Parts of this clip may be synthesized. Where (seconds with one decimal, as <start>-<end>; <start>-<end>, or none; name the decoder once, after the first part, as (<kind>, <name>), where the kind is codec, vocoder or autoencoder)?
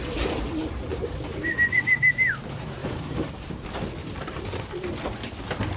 2.8-3.5 (vocoder, BigVGAN v2); 4.0-4.6